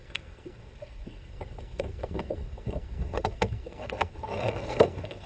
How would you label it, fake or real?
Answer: fake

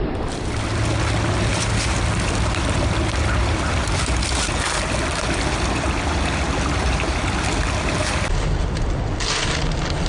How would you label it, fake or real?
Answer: real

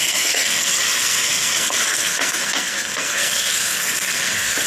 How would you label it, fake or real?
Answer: fake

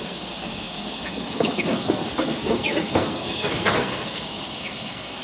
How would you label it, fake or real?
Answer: fake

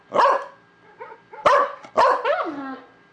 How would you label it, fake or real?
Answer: real